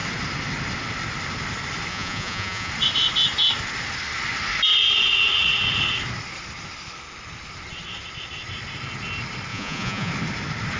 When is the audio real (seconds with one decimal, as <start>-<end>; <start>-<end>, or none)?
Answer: 0.0-1.9; 2.7-9.5; 10.1-10.8

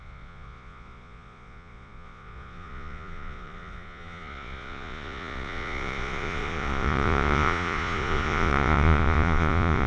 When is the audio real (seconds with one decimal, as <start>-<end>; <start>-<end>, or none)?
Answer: none

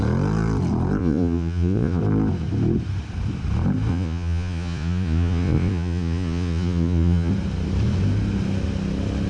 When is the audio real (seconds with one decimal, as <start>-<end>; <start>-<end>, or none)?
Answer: 0.0-1.0; 2.0-3.9; 7.3-9.3

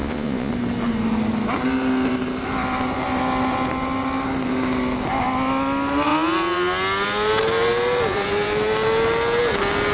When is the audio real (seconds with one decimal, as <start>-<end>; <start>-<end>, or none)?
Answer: 0.5-9.9

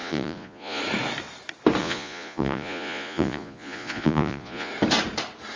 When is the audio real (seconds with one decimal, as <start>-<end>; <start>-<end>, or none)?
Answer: 0.8-1.8; 4.7-5.6

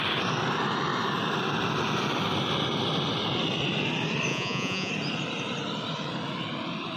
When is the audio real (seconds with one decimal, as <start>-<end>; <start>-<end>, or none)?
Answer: 0.0-4.3; 4.9-7.0